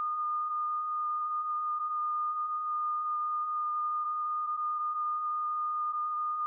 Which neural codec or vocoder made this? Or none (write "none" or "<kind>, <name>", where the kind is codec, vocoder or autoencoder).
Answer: vocoder, BigVGAN v2